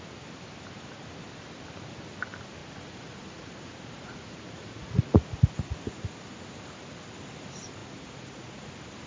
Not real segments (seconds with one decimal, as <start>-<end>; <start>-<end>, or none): 2.6-5.2; 7.8-8.7